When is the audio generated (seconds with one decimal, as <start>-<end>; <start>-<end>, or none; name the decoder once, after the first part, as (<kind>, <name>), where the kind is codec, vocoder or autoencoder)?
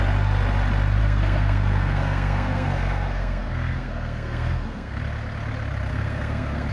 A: 1.0-5.0 (codec, SNAC); 5.9-6.7